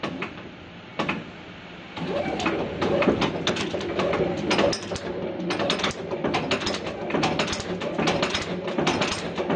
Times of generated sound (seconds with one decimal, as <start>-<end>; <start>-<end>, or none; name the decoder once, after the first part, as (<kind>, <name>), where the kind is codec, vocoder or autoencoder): none